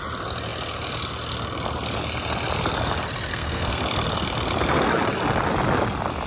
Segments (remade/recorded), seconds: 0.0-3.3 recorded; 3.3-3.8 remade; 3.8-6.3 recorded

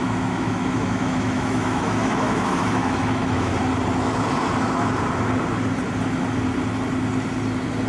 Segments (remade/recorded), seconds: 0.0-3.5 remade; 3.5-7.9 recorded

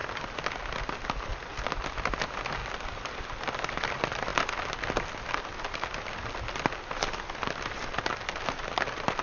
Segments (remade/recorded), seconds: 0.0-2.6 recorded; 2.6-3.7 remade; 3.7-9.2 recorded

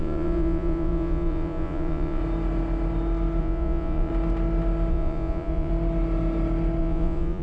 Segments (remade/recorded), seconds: 0.0-2.2 remade; 2.2-3.4 recorded; 3.4-4.1 remade; 4.1-4.9 recorded; 4.9-5.7 remade; 5.7-6.8 recorded; 6.8-7.4 remade

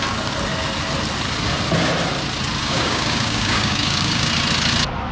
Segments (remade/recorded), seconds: 0.0-2.6 recorded; 2.6-4.3 remade; 4.3-5.1 recorded